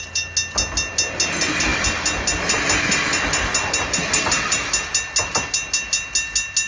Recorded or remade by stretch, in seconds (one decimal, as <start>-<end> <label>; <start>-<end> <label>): 0.0-6.7 recorded